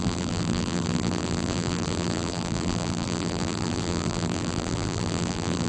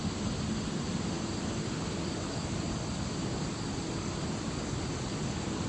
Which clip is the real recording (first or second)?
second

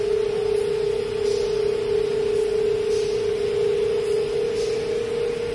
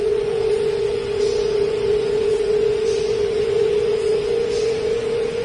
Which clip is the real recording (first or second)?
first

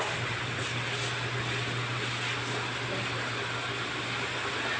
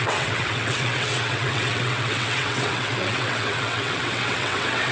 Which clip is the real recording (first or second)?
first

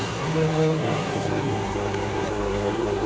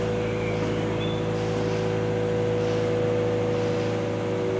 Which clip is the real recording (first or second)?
second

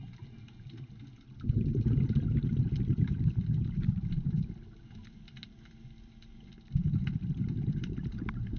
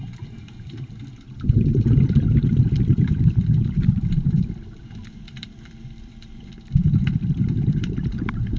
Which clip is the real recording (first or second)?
first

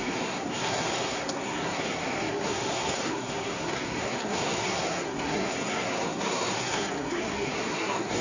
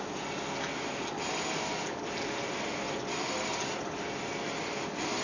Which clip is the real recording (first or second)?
second